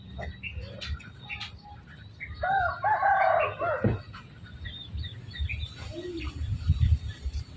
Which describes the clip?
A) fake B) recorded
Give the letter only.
B